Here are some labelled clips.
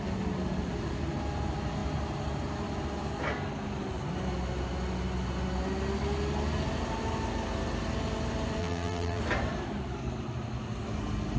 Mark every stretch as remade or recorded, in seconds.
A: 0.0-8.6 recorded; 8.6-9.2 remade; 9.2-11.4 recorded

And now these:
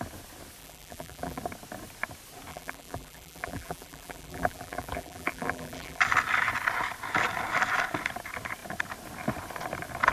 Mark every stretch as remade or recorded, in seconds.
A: 0.0-0.6 recorded; 0.6-1.4 remade; 1.4-2.5 recorded; 2.5-6.0 remade; 6.0-10.1 recorded

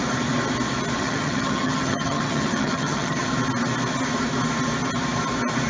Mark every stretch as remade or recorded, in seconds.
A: 0.0-1.0 recorded; 1.0-3.3 remade; 3.3-5.7 recorded